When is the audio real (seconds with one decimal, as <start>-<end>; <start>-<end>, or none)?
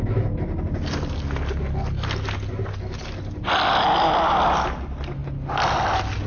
0.0-6.3